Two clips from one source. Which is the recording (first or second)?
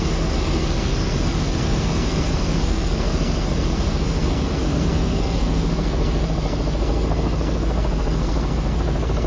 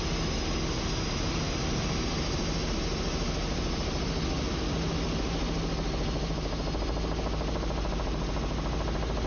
second